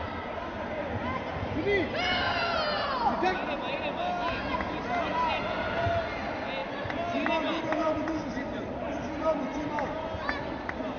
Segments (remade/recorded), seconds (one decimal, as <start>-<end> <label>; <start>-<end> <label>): 0.0-11.0 recorded